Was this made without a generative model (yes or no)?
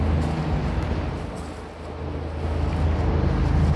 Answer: yes